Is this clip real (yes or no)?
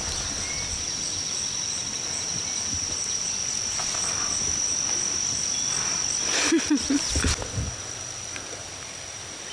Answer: yes